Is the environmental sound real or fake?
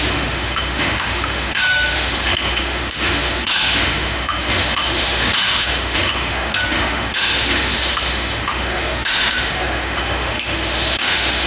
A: fake